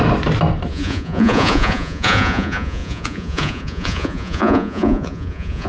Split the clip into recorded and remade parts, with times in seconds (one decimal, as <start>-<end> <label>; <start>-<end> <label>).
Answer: 0.0-0.7 recorded; 0.7-5.7 remade